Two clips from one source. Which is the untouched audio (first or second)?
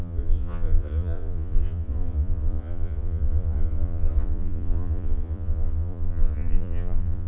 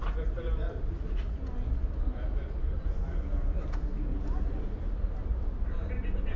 second